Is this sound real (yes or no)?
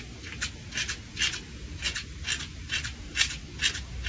yes